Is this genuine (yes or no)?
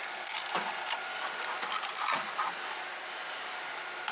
yes